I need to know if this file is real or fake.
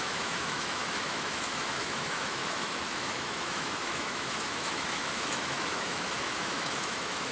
fake